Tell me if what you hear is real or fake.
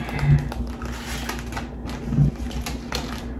real